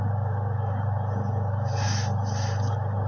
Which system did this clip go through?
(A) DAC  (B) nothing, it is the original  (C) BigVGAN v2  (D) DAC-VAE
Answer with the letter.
B